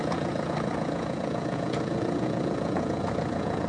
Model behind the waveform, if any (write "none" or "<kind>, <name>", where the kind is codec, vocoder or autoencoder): vocoder, Vocos